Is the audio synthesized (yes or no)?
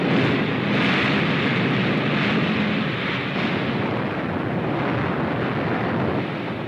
no